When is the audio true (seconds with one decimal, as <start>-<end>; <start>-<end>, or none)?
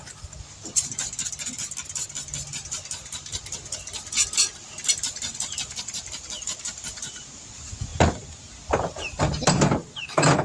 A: 0.0-10.4